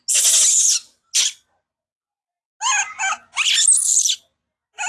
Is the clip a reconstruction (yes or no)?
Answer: no